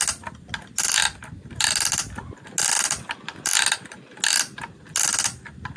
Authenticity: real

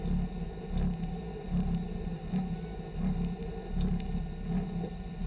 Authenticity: real